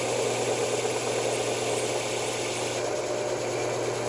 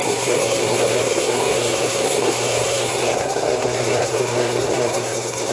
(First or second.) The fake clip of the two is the second